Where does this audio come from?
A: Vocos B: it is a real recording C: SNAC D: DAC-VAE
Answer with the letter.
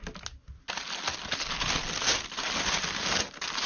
B